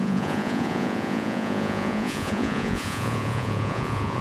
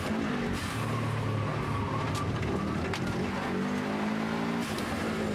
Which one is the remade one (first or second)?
first